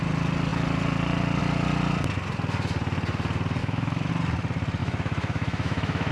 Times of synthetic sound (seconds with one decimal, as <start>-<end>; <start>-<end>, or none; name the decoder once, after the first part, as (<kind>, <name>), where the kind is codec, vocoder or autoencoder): 3.6-4.1 (autoencoder, DAC-VAE); 4.8-6.1